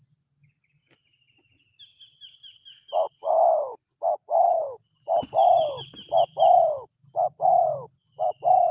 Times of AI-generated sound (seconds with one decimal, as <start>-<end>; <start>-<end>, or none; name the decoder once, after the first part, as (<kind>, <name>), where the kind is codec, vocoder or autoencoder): none